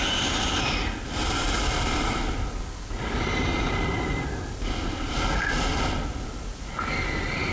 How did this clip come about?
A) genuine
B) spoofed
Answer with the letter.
A